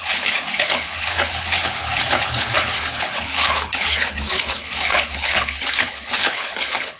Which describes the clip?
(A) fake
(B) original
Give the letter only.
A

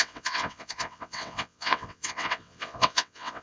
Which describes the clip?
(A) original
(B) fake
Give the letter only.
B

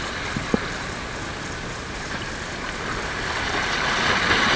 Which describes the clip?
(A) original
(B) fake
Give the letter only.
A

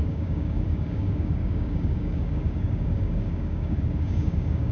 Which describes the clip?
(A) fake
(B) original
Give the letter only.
A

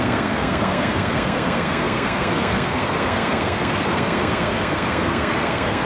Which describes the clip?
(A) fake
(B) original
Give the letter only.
A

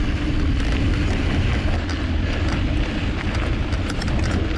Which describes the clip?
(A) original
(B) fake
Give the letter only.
A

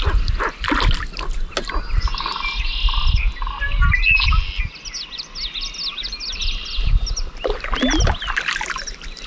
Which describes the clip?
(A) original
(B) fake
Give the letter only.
A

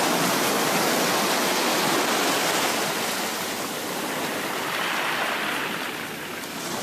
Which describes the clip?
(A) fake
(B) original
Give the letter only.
B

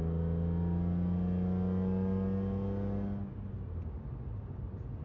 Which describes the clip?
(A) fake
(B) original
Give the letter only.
B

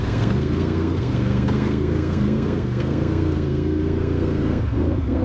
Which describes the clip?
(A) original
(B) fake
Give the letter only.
B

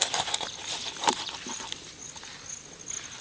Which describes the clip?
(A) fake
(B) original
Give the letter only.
B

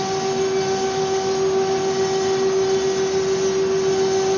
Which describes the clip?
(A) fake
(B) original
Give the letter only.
B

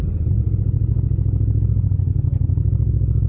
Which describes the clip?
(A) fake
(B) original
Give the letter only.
B